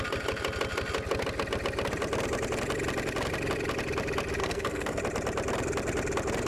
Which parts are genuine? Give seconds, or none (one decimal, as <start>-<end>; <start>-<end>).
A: 0.0-4.4; 5.0-6.5